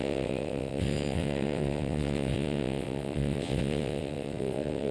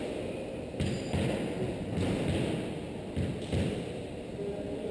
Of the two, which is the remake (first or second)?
first